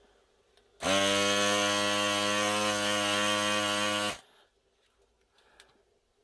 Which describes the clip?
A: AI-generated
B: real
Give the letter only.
B